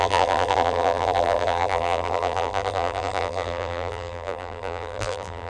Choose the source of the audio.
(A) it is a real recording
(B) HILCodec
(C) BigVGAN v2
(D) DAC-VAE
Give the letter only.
C